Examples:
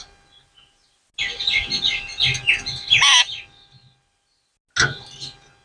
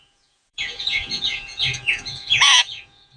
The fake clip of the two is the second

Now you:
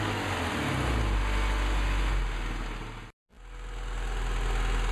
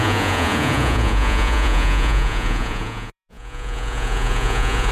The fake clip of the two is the second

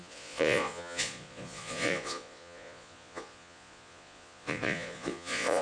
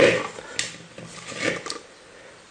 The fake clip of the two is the first